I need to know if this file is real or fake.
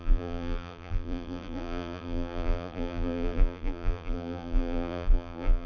fake